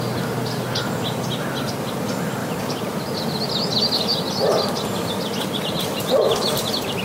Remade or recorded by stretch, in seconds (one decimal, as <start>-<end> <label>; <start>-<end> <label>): 0.0-2.4 recorded; 2.4-3.0 remade; 3.0-7.0 recorded